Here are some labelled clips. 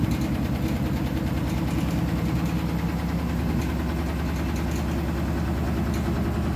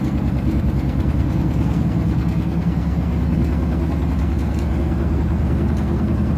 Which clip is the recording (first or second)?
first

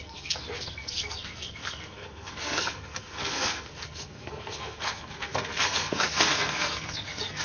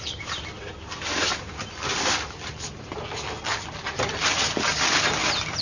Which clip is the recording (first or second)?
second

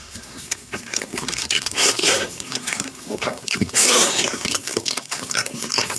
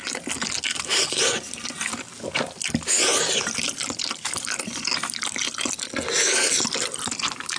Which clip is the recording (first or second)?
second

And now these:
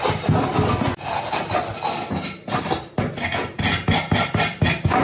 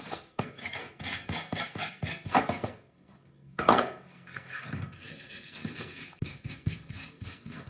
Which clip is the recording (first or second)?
first